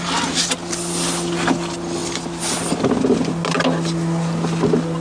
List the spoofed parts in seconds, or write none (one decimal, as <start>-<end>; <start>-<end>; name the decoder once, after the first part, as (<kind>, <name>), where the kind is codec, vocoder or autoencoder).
none